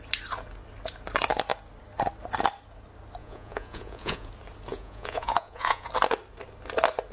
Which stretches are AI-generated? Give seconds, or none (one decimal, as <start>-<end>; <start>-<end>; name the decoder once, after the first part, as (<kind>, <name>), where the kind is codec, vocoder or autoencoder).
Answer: 3.2-4.3 (vocoder, Vocos); 4.7-5.9